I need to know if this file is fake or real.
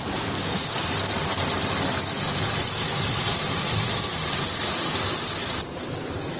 fake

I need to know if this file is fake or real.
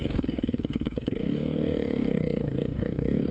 fake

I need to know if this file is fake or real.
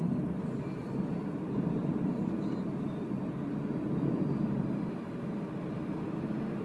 real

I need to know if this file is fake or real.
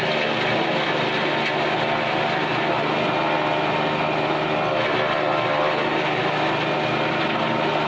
real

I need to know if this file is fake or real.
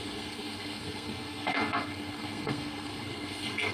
fake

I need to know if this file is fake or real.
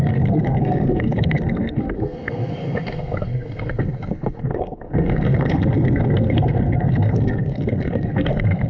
fake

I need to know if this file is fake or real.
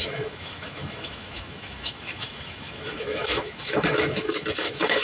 fake